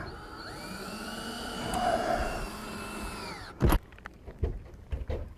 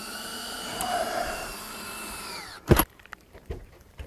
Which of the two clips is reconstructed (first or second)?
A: second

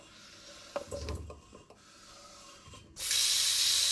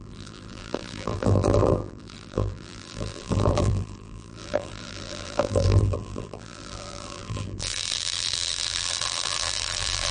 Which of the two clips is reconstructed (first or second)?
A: second